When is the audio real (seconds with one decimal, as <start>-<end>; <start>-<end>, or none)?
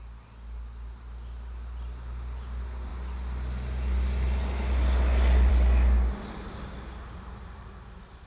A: 0.0-8.3